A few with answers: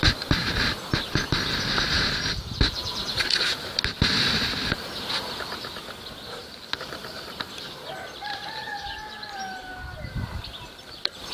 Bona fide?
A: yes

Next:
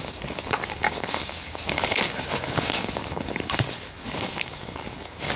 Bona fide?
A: no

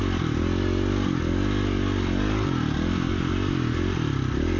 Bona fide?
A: yes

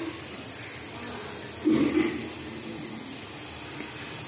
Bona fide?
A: yes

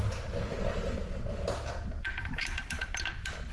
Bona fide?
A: yes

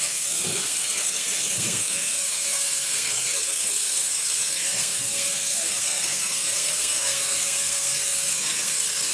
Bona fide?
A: no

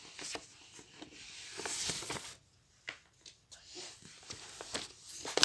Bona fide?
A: yes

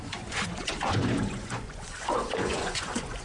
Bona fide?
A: no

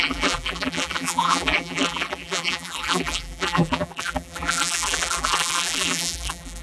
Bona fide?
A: no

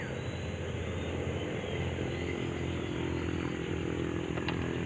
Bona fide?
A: yes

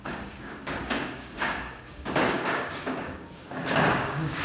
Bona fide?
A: no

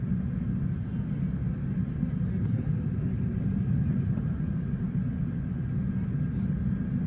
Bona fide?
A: yes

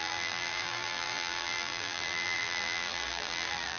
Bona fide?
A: no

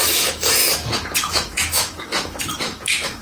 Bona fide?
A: no